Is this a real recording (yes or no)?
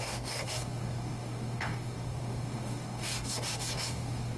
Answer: no